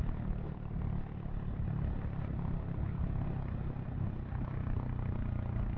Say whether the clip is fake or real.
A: real